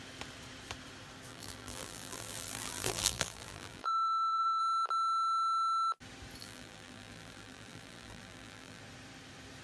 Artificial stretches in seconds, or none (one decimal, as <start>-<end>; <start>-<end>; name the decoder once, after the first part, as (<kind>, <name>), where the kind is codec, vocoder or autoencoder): 1.3-4.6 (vocoder, BigVGAN v2); 6.4-8.8